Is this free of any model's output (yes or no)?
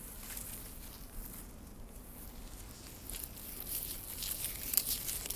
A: yes